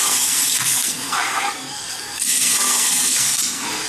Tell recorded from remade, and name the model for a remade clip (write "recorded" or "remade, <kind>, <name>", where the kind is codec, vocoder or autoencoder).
remade, codec, SNAC